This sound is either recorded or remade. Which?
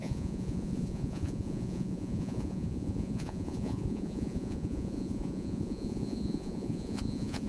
remade